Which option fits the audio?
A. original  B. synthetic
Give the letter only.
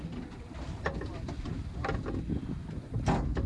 B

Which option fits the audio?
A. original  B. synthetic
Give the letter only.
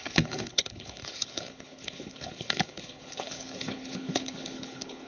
B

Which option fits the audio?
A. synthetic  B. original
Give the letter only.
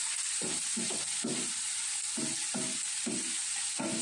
B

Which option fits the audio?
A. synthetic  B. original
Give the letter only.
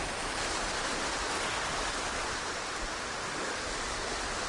B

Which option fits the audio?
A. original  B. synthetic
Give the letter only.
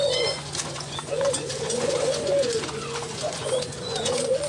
B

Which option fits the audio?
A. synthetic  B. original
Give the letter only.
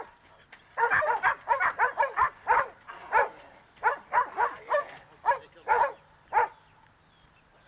B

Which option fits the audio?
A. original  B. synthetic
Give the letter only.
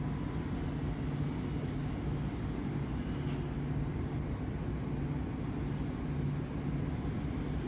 A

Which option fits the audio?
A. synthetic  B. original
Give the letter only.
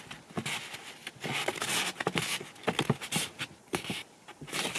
B